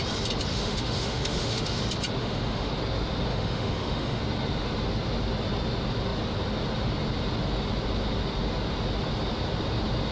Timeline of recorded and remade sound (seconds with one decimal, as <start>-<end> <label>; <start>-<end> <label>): 0.0-0.5 recorded; 0.5-1.8 remade; 1.8-2.2 recorded; 2.2-2.7 remade; 2.7-3.3 recorded; 3.3-4.2 remade; 4.2-10.1 recorded